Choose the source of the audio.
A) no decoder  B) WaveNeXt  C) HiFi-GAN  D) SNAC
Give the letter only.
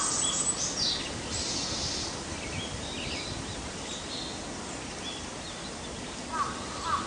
A